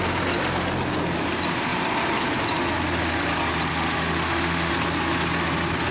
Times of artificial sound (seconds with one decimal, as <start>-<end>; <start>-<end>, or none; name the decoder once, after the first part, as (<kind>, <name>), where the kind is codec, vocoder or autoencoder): 3.7-4.7 (autoencoder, DAC-VAE)